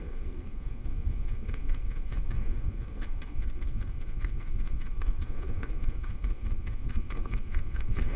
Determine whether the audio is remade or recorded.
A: remade